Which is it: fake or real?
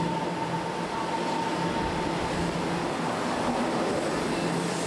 real